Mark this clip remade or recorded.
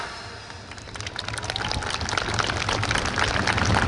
recorded